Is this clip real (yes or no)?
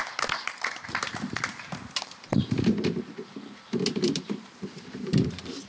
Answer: no